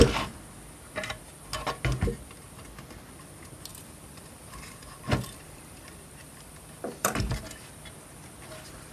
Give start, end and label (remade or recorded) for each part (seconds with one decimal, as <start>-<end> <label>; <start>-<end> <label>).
0.0-3.7 recorded; 3.7-7.7 remade; 7.7-8.9 recorded